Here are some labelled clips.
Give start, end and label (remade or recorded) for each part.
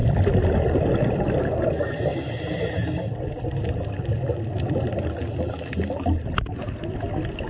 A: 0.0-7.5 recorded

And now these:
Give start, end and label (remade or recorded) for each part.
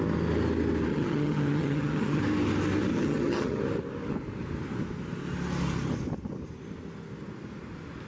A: 0.0-0.9 recorded; 0.9-2.2 remade; 2.2-2.9 recorded; 2.9-3.6 remade; 3.6-8.1 recorded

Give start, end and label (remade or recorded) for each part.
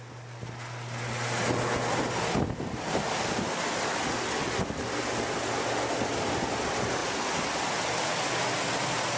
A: 0.0-9.2 recorded